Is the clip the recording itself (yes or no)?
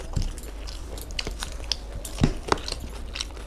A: yes